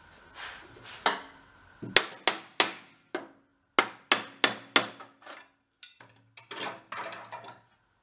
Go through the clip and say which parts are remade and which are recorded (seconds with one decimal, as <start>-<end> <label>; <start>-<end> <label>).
0.0-8.0 recorded

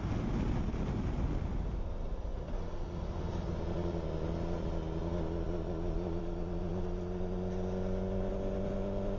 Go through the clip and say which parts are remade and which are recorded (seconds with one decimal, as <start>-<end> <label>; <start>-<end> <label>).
0.0-9.2 recorded

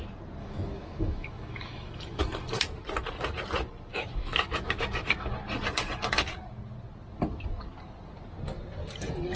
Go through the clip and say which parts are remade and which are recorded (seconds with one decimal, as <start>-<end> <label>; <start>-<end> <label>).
0.0-0.4 recorded; 0.4-2.2 remade; 2.2-3.9 recorded; 3.9-5.3 remade; 5.3-9.4 recorded

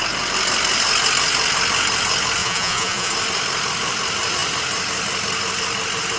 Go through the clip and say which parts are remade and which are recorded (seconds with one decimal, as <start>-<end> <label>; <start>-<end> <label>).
0.0-2.4 recorded; 2.4-3.1 remade; 3.1-6.2 recorded

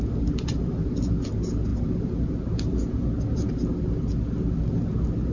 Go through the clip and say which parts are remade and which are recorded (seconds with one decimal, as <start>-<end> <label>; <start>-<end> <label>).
0.0-5.3 recorded

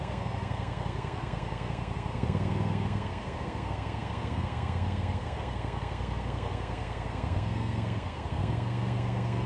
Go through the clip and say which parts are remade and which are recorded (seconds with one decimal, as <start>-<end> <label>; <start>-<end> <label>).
0.0-9.5 remade

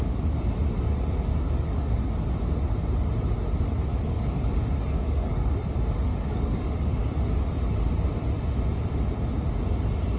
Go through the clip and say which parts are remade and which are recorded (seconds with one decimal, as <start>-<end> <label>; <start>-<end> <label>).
0.0-1.3 recorded; 1.3-1.9 remade; 1.9-3.9 recorded; 3.9-5.5 remade; 5.5-6.1 recorded; 6.1-7.2 remade; 7.2-10.2 recorded